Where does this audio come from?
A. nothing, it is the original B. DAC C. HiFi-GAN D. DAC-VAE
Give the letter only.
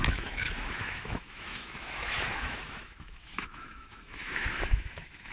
D